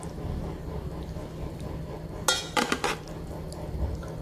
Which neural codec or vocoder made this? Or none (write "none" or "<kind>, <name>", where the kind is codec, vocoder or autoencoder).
none